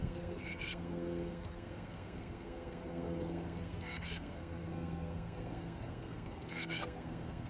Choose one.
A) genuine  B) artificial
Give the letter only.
B